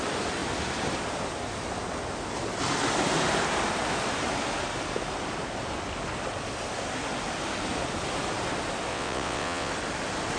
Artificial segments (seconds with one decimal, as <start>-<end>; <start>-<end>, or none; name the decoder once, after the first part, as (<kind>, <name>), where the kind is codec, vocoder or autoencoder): 8.9-9.7 (vocoder, WaveNeXt)